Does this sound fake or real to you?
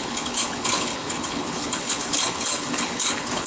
fake